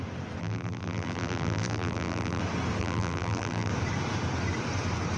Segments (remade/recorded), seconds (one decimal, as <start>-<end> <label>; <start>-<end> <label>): 0.0-0.4 recorded; 0.4-2.4 remade; 2.4-2.8 recorded; 2.8-3.7 remade; 3.7-5.2 recorded